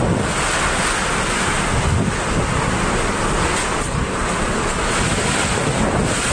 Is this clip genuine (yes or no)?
yes